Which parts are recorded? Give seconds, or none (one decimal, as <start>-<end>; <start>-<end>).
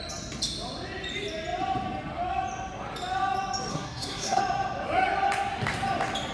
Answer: 0.0-3.7; 4.4-6.3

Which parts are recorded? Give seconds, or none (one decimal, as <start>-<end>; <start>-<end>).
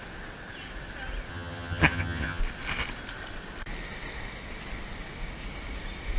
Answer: 0.0-1.3; 2.4-6.2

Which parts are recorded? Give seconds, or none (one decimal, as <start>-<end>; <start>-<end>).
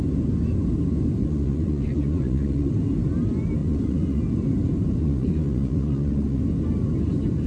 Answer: 0.0-1.2; 2.7-3.6; 4.2-5.0; 6.4-7.5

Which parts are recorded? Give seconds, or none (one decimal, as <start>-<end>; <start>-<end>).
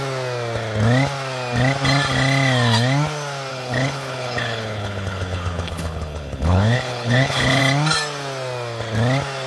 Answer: 0.0-3.5; 7.6-9.5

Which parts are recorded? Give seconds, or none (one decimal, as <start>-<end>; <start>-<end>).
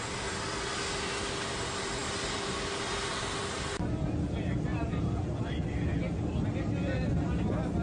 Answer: 0.0-4.7; 5.2-7.8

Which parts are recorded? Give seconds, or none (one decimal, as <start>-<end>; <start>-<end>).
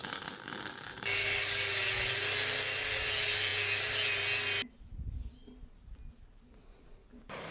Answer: 1.7-7.0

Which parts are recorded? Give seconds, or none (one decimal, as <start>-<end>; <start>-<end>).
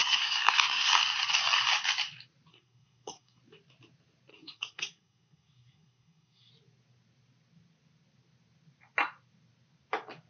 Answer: 0.9-2.5; 3.4-4.3; 6.5-10.3